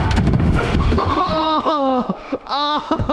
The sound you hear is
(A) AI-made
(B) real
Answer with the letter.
A